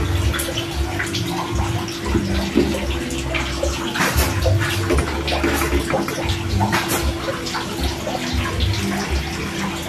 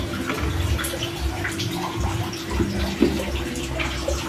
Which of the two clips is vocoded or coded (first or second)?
second